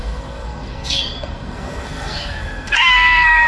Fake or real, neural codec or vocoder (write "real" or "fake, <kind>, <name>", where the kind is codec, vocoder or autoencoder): fake, codec, SNAC